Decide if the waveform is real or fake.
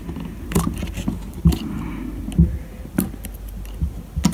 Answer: real